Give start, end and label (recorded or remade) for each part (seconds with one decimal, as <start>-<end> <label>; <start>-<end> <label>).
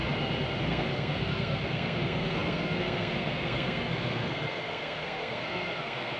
0.0-0.6 recorded; 0.6-6.2 remade